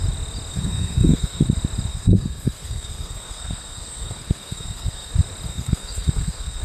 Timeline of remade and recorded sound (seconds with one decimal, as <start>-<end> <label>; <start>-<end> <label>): 0.0-0.5 recorded; 0.5-1.4 remade; 1.4-1.9 recorded; 1.9-5.1 remade; 5.1-5.5 recorded; 5.5-6.6 remade

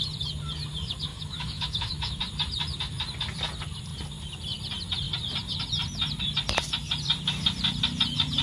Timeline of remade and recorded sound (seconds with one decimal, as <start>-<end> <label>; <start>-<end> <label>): 0.0-1.1 recorded; 1.1-2.2 remade; 2.2-8.4 recorded

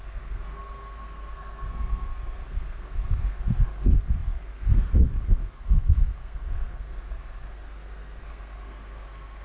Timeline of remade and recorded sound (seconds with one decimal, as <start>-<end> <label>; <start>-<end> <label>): 0.0-9.4 remade